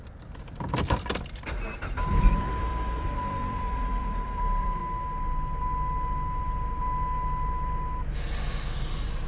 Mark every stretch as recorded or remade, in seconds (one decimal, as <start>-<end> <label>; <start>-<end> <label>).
0.0-4.8 remade; 4.8-9.3 recorded